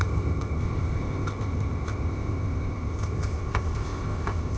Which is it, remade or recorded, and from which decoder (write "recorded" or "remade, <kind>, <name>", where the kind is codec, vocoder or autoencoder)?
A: remade, codec, ZipCodec